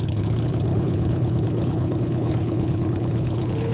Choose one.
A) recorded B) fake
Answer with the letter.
B